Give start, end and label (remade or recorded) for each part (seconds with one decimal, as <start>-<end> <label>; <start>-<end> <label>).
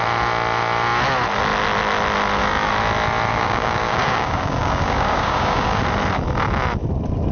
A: 0.0-3.3 recorded; 3.3-5.8 remade; 5.8-7.3 recorded